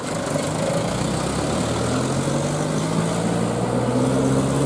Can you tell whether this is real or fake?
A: real